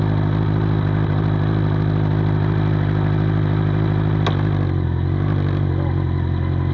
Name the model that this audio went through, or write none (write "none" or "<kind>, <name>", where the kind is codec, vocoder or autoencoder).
none